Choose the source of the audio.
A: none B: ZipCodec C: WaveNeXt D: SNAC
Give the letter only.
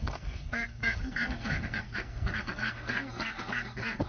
D